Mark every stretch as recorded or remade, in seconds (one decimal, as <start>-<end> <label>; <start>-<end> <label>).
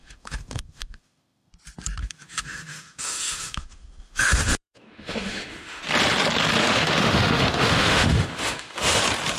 0.0-1.5 remade; 1.5-2.0 recorded; 2.0-5.8 remade; 5.8-6.6 recorded; 6.6-9.0 remade; 9.0-9.4 recorded